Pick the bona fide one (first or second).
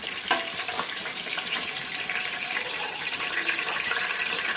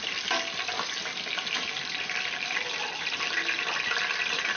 second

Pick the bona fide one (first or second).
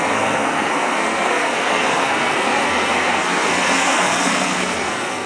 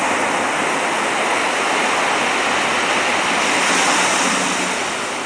second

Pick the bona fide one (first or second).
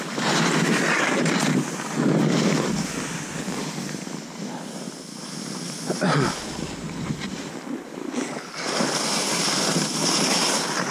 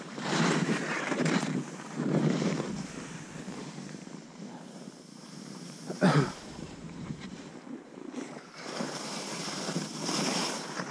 first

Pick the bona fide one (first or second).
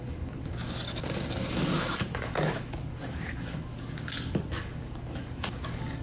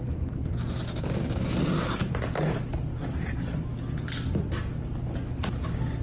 second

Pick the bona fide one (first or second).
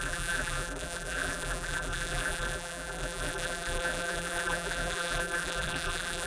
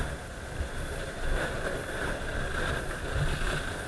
second